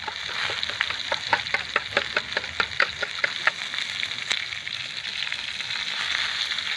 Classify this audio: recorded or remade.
recorded